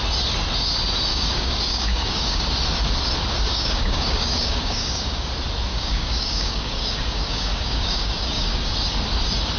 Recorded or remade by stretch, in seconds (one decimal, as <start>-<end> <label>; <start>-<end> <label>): 0.0-1.1 recorded; 1.1-2.4 remade; 2.4-3.5 recorded; 3.5-5.3 remade; 5.3-5.7 recorded; 5.7-8.7 remade; 8.7-9.6 recorded